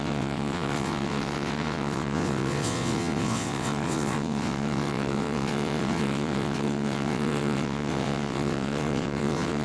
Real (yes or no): no